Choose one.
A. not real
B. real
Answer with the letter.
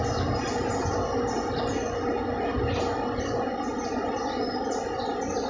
B